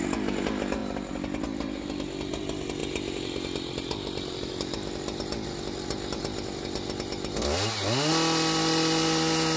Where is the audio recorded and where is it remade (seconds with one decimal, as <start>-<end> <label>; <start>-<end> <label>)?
0.0-9.6 recorded